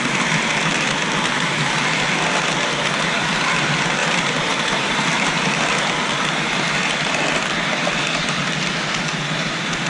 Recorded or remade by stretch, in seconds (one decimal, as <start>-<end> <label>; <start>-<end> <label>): 0.0-4.0 recorded; 4.0-5.0 remade; 5.0-9.9 recorded